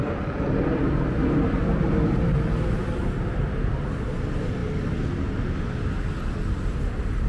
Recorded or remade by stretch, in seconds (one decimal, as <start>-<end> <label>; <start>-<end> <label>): 0.0-7.3 recorded

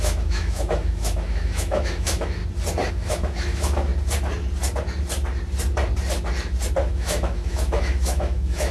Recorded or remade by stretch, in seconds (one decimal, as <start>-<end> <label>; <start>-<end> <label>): 0.0-2.4 remade; 2.4-2.9 recorded; 2.9-3.9 remade; 3.9-6.8 recorded; 6.8-8.7 remade

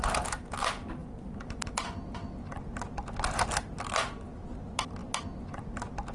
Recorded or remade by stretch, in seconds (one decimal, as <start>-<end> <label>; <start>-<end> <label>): 0.0-6.1 recorded

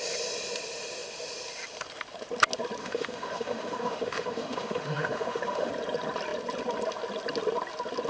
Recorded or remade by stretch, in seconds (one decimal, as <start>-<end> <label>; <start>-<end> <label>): 0.0-2.8 recorded; 2.8-5.7 remade; 5.7-8.1 recorded

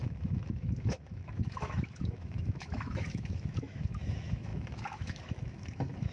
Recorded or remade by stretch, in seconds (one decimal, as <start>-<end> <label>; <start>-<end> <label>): 0.0-6.1 remade

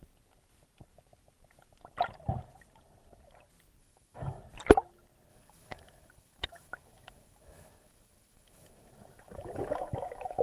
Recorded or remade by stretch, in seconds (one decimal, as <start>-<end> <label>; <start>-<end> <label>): 0.0-3.8 recorded; 3.8-4.4 remade; 4.4-5.3 recorded; 5.3-10.4 remade